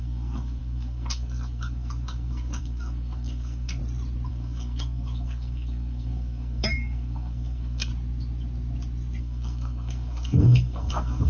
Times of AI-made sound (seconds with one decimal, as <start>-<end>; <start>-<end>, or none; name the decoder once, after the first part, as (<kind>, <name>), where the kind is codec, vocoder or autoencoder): 0.0-3.8 (codec, SNAC); 4.3-7.9; 9.2-11.3